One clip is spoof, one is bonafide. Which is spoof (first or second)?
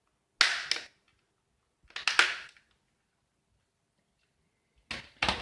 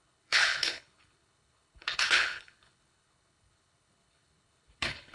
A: second